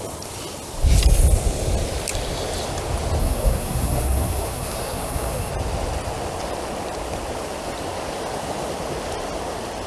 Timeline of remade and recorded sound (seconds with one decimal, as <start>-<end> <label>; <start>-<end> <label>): 0.0-3.2 recorded; 3.2-5.5 remade; 5.5-9.9 recorded